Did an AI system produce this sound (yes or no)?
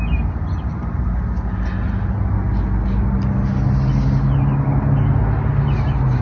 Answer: no